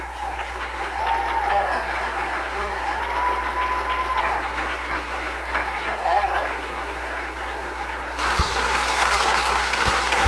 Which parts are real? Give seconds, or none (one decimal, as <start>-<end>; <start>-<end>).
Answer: 1.0-1.5; 3.0-4.2